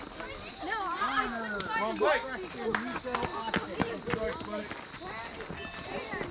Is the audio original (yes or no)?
yes